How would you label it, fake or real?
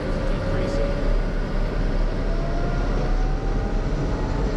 real